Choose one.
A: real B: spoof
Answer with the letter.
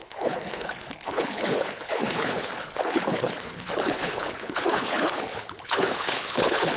B